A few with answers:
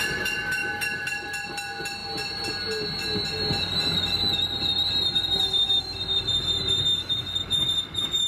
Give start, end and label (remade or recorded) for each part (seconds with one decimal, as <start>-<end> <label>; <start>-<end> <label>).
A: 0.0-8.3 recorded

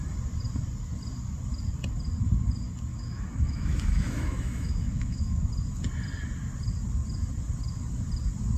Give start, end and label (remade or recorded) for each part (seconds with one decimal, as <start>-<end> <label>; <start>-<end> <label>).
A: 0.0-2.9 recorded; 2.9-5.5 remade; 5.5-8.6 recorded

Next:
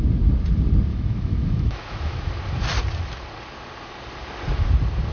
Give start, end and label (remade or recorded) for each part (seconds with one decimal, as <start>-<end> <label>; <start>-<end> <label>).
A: 0.0-0.9 recorded; 0.9-2.3 remade; 2.3-5.1 recorded

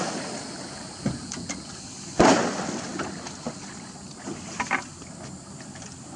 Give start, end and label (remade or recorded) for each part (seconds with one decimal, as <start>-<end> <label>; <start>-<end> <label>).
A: 0.0-6.2 recorded

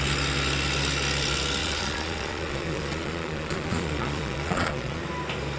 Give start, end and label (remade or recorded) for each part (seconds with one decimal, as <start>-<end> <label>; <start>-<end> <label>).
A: 0.0-1.6 recorded; 1.6-5.0 remade; 5.0-5.6 recorded

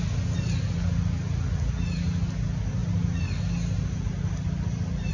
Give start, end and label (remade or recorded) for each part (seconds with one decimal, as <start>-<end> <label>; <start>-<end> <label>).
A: 0.0-5.1 recorded

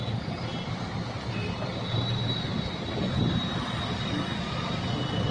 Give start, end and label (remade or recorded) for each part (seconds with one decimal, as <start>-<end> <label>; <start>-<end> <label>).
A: 0.0-5.3 recorded